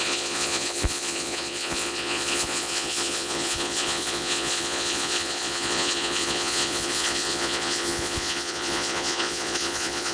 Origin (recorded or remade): remade